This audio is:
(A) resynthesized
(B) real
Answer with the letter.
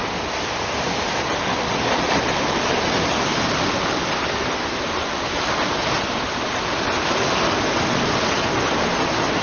B